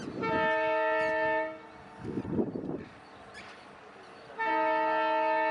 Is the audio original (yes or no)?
yes